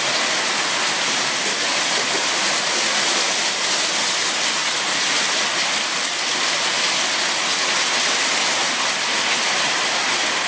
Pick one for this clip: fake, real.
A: real